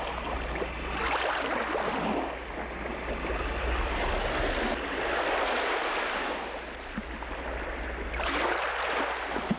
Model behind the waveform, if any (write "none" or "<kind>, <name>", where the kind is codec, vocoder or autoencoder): none